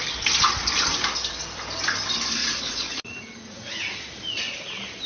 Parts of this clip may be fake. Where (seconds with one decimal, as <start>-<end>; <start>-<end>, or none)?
2.4-3.9

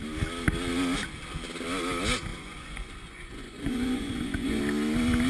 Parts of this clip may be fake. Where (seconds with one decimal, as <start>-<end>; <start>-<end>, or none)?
2.3-4.6

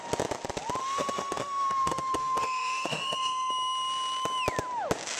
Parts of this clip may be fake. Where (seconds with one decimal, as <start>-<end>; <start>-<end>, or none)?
0.8-3.5

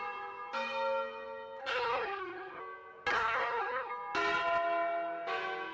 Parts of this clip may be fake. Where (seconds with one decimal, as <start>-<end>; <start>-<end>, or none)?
1.6-2.6; 3.1-3.9

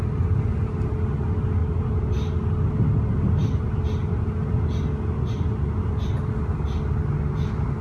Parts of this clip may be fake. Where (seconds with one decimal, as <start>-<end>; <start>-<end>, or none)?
none